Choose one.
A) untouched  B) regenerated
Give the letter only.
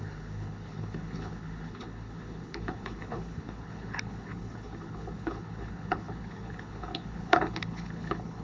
B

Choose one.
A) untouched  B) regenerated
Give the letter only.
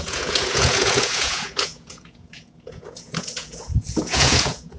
B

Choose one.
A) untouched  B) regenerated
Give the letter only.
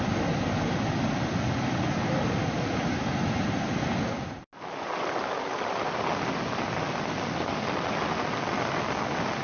A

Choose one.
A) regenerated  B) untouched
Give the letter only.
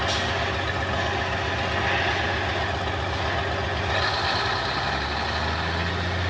B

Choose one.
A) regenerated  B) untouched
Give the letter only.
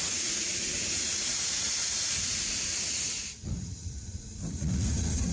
A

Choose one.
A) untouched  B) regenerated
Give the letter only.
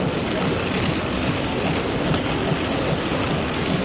A